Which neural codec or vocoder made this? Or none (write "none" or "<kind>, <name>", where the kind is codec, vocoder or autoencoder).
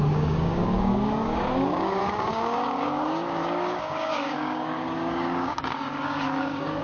codec, DAC